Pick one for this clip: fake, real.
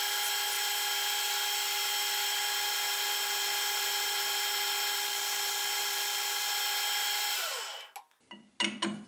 real